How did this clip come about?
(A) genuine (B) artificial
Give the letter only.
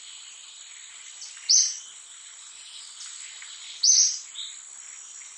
A